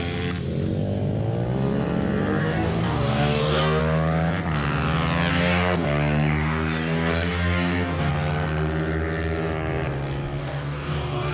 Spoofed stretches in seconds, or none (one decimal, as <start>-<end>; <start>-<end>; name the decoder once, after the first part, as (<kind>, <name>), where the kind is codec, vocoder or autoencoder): 2.4-3.8 (codec, DAC); 5.3-8.1; 10.4-11.3